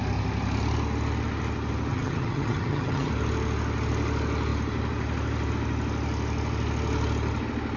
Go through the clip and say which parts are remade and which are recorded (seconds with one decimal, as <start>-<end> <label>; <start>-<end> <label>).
0.0-1.9 recorded; 1.9-3.1 remade; 3.1-7.8 recorded